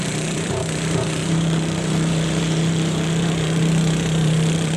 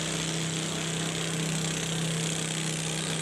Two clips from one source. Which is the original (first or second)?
second